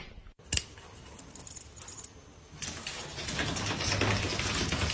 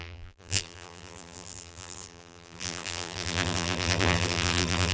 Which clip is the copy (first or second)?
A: second